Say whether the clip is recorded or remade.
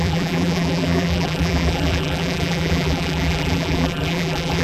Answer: remade